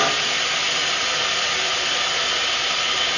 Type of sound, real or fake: real